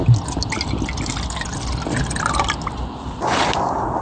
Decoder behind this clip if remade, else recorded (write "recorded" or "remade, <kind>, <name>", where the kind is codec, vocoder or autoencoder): recorded